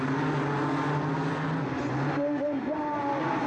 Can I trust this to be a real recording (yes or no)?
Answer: yes